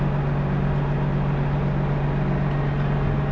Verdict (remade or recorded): recorded